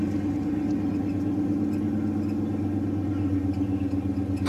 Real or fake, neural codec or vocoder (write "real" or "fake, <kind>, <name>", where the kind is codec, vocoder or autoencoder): real